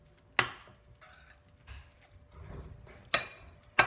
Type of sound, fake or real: real